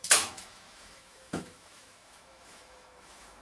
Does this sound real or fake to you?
fake